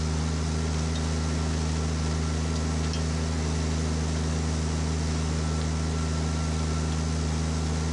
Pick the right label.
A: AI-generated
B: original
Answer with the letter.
B